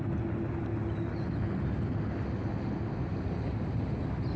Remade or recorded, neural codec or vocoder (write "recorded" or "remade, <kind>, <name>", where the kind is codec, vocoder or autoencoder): recorded